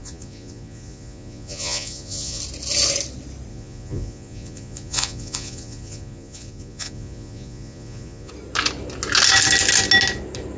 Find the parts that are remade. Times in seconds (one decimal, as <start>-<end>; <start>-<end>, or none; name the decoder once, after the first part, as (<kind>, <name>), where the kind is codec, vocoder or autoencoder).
0.0-2.4 (vocoder, Vocos); 3.5-8.3